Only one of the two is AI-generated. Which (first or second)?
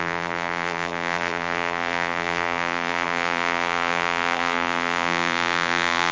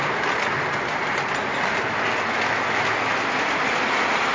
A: first